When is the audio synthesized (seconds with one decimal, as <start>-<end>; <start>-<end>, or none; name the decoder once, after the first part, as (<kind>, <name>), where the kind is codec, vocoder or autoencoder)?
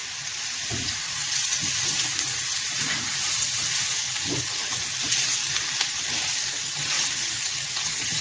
0.7-5.4 (vocoder, Vocos); 6.2-8.2